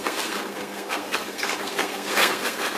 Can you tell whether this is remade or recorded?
remade